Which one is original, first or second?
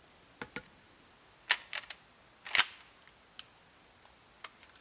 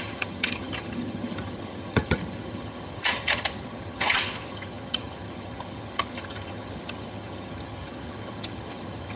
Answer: first